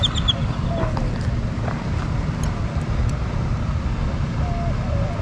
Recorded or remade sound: recorded